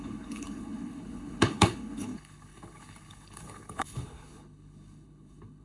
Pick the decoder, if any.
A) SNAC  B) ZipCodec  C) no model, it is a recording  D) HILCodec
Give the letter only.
D